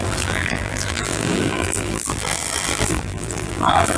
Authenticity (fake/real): fake